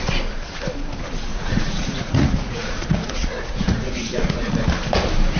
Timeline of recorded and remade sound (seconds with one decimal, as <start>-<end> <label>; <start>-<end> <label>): 0.0-1.3 recorded; 1.3-4.5 remade; 4.5-5.4 recorded

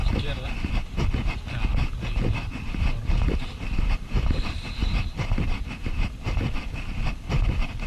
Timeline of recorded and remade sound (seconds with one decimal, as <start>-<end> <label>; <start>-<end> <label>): 0.0-0.7 remade; 0.7-1.7 recorded; 1.7-6.4 remade; 6.4-7.9 recorded